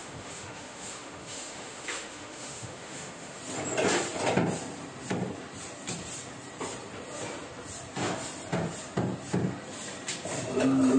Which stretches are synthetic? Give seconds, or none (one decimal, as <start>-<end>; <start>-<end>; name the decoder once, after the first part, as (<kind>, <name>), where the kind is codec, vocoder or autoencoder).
0.0-3.4 (autoencoder, DAC-VAE)